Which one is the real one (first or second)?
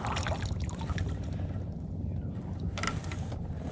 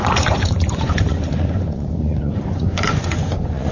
first